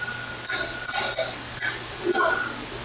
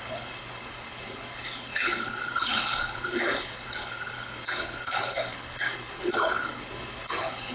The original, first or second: first